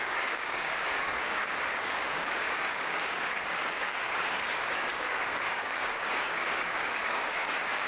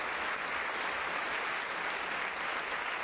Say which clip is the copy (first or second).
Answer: first